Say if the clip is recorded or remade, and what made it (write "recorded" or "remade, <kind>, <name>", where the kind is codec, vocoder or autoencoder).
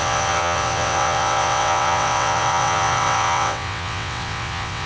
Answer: remade, vocoder, WaveNeXt